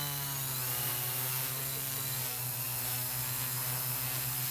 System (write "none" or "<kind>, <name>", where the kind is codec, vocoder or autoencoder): none